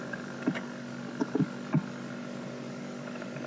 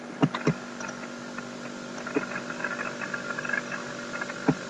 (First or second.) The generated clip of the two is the first